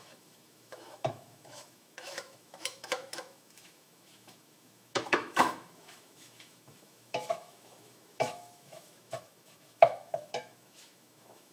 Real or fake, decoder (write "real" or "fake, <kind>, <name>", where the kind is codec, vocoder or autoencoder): fake, autoencoder, DAC-VAE